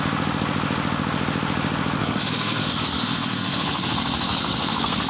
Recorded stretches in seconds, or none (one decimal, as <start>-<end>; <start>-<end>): 0.0-2.0